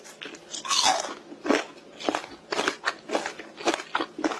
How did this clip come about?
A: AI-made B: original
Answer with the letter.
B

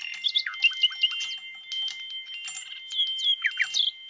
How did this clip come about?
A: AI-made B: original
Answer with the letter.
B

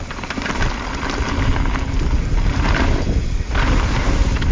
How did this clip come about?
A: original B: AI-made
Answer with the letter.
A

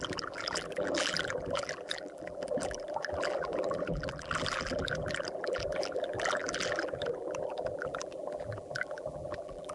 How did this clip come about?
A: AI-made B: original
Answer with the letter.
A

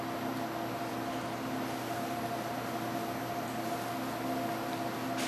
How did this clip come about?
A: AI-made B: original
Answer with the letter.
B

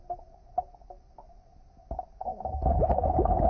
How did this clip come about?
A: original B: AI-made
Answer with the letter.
A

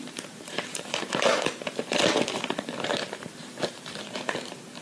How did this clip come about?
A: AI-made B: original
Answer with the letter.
A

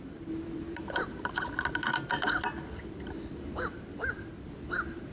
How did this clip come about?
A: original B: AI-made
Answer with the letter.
B